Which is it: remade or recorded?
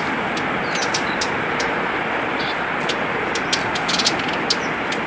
recorded